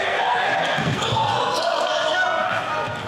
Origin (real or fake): fake